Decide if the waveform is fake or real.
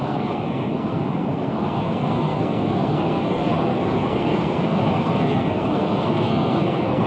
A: fake